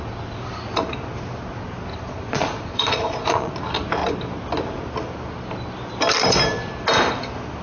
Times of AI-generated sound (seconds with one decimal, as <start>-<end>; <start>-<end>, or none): 1.9-3.5

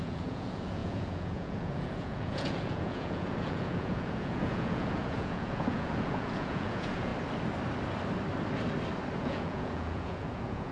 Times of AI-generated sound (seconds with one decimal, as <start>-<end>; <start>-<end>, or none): 0.0-7.1; 9.2-10.7